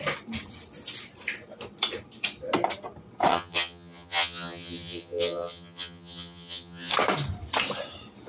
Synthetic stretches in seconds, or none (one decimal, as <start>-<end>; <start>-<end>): 3.3-6.9